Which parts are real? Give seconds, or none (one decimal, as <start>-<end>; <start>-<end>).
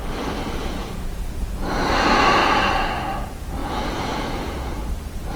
0.0-0.6; 1.9-2.4; 3.1-3.6